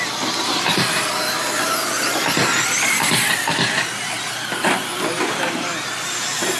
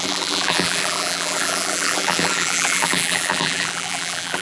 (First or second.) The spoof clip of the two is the second